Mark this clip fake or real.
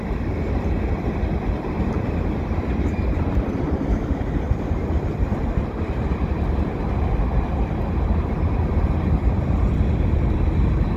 real